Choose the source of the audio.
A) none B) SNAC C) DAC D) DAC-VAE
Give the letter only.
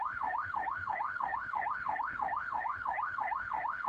D